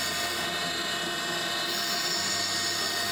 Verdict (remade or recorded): recorded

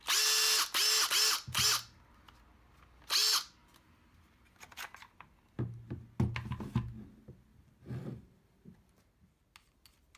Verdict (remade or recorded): recorded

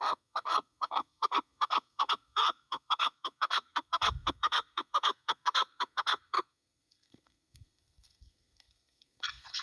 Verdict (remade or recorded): remade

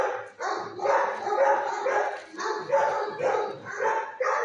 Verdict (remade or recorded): recorded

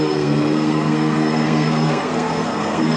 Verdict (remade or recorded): remade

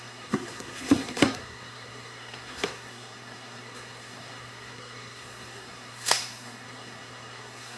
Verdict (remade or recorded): remade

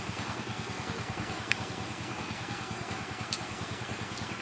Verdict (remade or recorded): remade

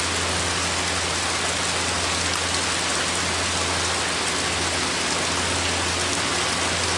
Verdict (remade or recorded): recorded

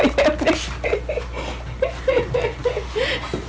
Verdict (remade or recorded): recorded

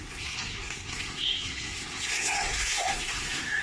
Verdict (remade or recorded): remade